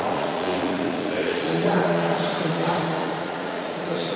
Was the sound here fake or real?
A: fake